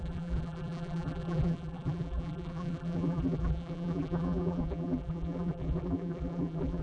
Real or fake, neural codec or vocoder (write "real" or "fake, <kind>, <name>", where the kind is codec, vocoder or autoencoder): fake, vocoder, BigVGAN v2